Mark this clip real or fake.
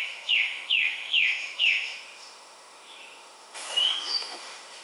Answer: fake